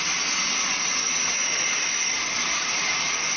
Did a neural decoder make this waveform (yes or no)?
no